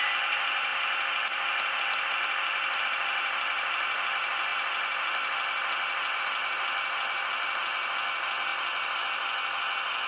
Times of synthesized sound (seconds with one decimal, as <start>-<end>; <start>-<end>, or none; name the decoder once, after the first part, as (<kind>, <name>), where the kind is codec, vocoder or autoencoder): none